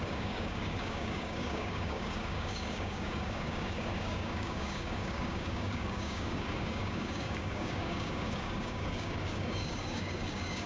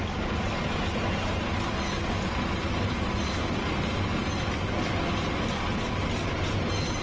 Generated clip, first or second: first